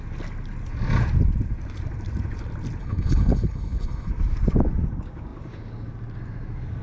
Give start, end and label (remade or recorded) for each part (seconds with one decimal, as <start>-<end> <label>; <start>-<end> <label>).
0.0-2.8 recorded; 2.8-4.1 remade; 4.1-6.8 recorded